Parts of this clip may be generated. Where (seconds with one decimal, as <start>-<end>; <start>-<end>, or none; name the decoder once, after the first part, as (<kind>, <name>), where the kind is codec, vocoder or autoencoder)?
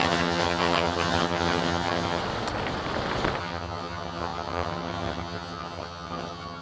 0.0-2.2 (vocoder, HiFi-GAN); 3.4-6.6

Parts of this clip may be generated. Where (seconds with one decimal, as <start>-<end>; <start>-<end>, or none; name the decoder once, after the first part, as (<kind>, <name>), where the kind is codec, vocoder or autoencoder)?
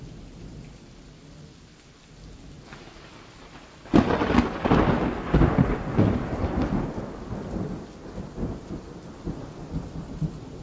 8.0-9.0 (vocoder, BigVGAN v2)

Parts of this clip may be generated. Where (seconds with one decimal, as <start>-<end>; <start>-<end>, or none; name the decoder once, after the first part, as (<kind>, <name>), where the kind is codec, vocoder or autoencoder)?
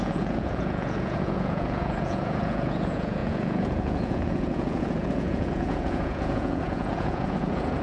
0.0-7.8 (vocoder, Vocos)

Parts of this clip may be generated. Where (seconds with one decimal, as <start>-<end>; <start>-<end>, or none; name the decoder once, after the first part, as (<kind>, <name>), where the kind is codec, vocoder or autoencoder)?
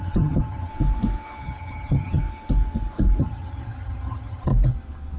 0.0-0.7 (vocoder, HiFi-GAN); 1.4-2.2; 3.2-4.5